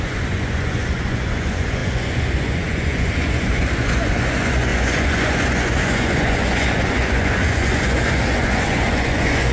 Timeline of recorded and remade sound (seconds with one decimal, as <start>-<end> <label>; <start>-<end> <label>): 0.0-9.5 remade

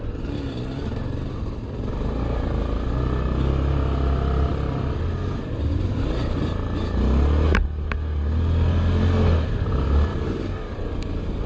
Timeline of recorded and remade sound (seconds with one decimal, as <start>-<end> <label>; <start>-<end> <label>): 0.0-10.1 recorded; 10.1-10.8 remade; 10.8-11.5 recorded

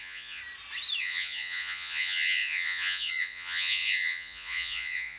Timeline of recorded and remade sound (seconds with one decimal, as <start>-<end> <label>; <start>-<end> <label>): 0.0-0.4 remade; 0.4-1.0 recorded; 1.0-5.2 remade